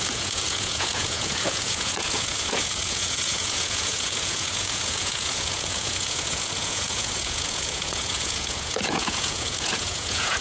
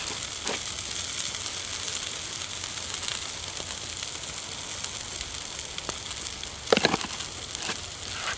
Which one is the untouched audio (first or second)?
second